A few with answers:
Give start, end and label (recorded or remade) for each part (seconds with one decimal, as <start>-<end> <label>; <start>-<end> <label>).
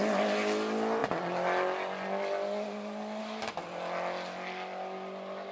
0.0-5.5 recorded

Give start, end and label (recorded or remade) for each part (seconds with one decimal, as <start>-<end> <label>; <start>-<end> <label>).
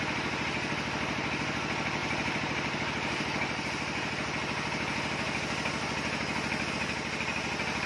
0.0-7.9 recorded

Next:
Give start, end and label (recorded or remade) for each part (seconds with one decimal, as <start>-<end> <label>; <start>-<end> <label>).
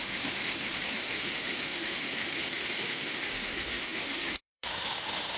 0.0-5.4 remade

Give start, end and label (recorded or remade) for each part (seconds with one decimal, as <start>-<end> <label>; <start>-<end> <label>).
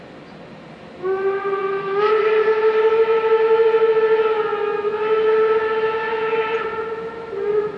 0.0-7.8 recorded